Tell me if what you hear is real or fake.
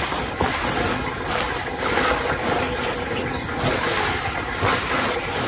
real